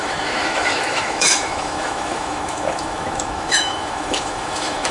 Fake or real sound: fake